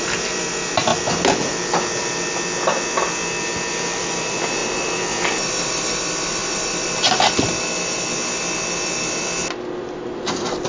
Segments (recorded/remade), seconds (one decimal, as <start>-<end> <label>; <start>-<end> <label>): 0.0-0.9 remade; 0.9-3.7 recorded; 3.7-6.4 remade; 6.4-10.2 recorded; 10.2-10.7 remade